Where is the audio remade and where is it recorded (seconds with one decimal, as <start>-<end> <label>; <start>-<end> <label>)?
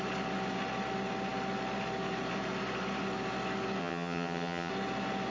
0.0-3.8 recorded; 3.8-4.7 remade; 4.7-5.3 recorded